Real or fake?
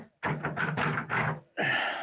real